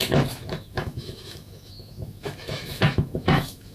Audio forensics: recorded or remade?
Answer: remade